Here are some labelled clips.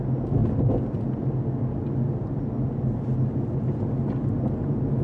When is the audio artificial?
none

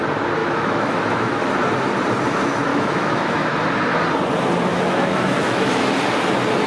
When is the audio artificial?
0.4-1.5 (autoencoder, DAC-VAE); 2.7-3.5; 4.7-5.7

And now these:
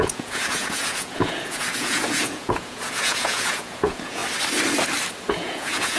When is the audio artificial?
0.0-4.2 (vocoder, Vocos); 5.3-6.0

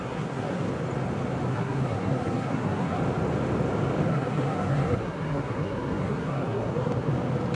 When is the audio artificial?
0.0-0.7 (codec, SNAC); 1.5-3.0; 4.1-7.1

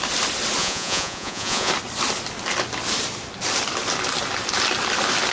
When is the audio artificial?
0.6-1.7 (vocoder, Vocos)

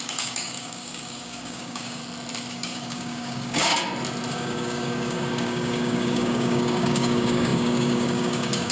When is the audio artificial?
0.0-2.0 (codec, DAC); 2.5-3.7; 4.3-8.7

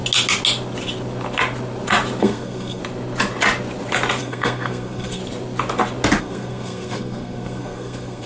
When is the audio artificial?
2.2-2.8 (codec, SNAC); 4.2-5.2; 6.2-8.3